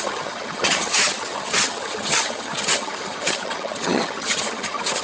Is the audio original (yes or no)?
no